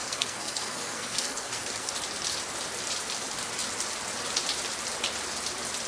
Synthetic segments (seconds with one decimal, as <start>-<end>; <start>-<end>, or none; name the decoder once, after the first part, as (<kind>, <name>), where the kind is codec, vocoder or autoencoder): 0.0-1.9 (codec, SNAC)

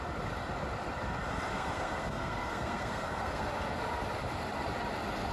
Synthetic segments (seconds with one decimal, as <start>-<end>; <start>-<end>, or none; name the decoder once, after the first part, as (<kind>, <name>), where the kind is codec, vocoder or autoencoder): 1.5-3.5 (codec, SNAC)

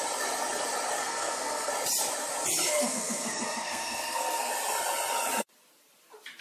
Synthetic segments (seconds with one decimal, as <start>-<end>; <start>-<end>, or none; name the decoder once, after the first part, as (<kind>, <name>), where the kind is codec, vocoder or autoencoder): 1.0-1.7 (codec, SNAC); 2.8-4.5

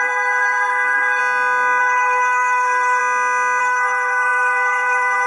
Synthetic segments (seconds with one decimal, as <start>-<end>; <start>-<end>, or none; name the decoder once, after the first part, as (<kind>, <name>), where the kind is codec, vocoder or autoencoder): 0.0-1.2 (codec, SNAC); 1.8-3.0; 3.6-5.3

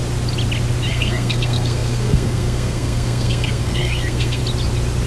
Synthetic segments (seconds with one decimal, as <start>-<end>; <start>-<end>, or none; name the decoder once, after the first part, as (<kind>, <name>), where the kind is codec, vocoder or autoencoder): 0.9-4.4 (codec, SNAC)

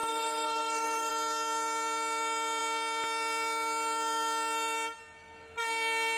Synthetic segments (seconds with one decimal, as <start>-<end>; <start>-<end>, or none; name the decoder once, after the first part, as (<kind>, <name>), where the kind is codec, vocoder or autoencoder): 0.0-1.1 (codec, SNAC)

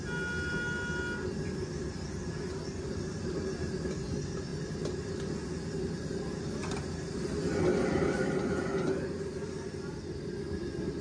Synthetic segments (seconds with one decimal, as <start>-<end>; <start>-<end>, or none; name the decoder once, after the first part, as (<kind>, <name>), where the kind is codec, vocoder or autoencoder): none

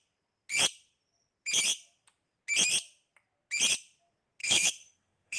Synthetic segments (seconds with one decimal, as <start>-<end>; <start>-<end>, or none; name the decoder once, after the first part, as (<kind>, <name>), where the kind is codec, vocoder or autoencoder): 4.4-5.4 (codec, SNAC)